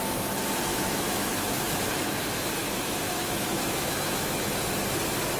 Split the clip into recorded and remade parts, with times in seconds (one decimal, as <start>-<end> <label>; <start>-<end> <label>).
0.0-0.7 recorded; 0.7-1.8 remade; 1.8-2.6 recorded; 2.6-4.5 remade; 4.5-5.4 recorded